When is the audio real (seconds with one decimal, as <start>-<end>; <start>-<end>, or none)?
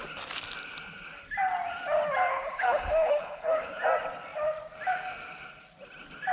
0.0-2.3; 3.8-6.3